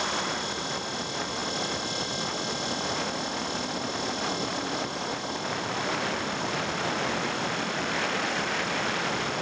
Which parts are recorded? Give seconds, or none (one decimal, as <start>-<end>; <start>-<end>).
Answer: 0.0-1.4; 2.1-4.5; 5.1-9.4